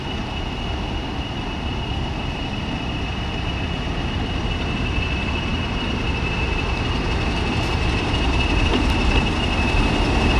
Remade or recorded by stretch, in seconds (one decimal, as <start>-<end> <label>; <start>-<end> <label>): 0.0-10.4 recorded